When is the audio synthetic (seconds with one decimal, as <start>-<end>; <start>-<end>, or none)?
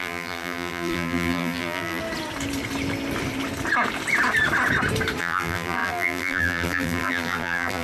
0.0-2.0; 5.2-7.8